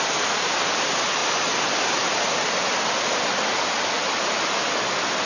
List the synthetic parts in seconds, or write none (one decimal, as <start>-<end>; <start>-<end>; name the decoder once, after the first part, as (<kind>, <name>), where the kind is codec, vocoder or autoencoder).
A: none